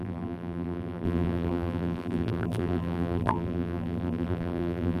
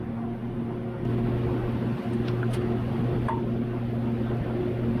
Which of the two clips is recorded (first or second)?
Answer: second